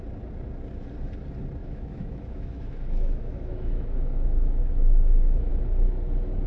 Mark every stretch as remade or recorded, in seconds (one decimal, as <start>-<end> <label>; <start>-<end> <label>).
0.0-1.6 recorded; 1.6-5.5 remade; 5.5-6.5 recorded

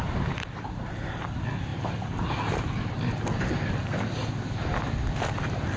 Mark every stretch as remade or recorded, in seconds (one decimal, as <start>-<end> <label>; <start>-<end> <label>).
0.0-5.8 recorded

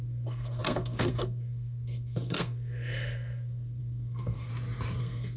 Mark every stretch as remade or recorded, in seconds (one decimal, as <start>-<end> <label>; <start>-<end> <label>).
0.0-4.5 remade; 4.5-5.0 recorded; 5.0-5.4 remade

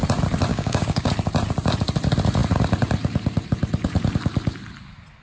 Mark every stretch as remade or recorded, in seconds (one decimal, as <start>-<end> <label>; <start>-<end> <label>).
0.0-0.5 recorded; 0.5-1.1 remade; 1.1-5.2 recorded

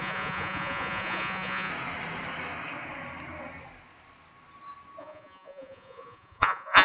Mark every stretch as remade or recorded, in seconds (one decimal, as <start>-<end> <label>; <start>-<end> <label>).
0.0-1.7 remade; 1.7-5.0 recorded; 5.0-6.8 remade

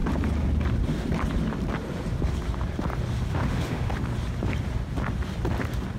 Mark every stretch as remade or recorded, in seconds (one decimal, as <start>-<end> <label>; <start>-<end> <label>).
0.0-3.3 recorded; 3.3-3.9 remade; 3.9-6.0 recorded

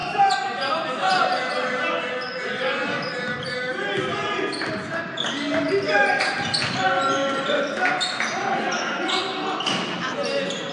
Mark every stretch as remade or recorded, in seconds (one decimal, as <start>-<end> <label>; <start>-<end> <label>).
0.0-10.7 recorded